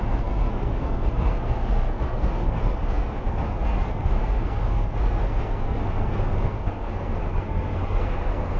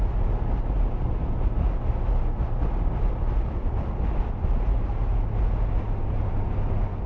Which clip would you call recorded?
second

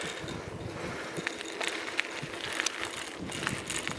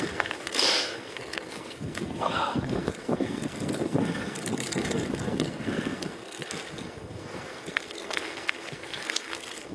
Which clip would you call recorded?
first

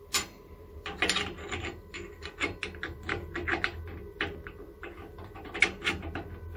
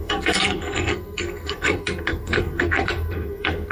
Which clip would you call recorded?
first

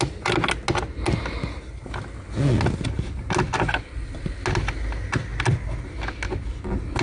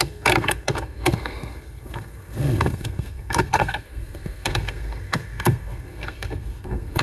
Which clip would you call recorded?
first